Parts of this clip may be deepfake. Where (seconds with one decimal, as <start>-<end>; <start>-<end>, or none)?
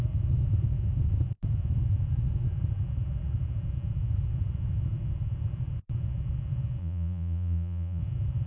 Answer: 6.8-8.0